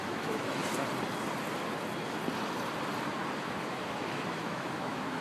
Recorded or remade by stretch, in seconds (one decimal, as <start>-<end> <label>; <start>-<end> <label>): 0.0-0.6 remade; 0.6-3.4 recorded; 3.4-5.2 remade